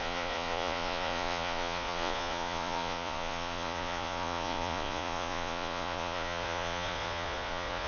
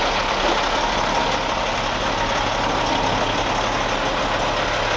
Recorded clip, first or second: second